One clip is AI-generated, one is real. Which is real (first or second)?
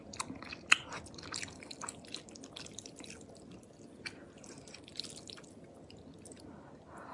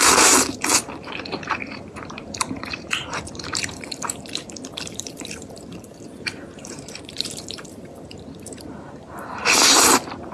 first